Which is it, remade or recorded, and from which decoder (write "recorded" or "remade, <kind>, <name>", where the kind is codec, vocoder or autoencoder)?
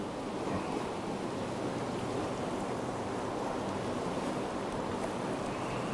recorded